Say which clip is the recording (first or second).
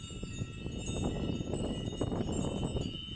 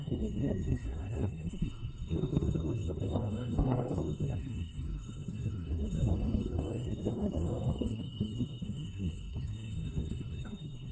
first